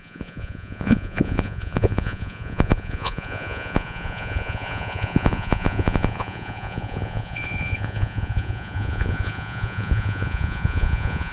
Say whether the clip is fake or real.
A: fake